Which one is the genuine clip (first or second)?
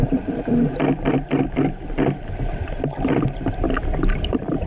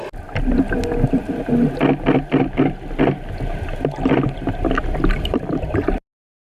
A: second